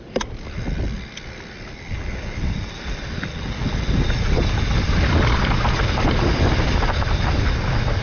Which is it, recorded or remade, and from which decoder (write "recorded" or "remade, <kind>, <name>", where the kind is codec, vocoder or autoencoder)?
recorded